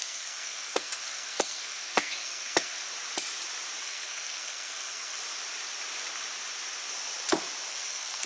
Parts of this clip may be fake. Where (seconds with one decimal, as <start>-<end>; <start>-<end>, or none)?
0.0-2.9; 3.8-5.2; 7.7-8.3